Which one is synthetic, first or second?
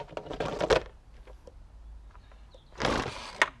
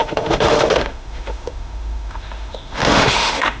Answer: second